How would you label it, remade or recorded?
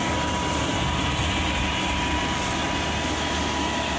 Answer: recorded